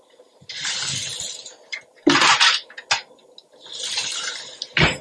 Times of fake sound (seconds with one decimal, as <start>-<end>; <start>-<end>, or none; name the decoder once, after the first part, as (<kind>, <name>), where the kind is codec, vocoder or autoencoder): none